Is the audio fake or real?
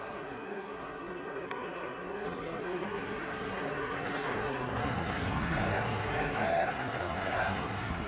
fake